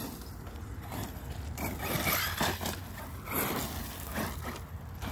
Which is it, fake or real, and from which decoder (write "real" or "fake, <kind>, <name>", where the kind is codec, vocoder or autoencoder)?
real